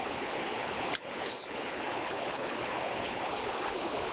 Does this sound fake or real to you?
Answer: fake